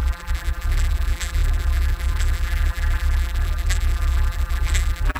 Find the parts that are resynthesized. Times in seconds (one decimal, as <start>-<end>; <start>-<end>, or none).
0.0-5.2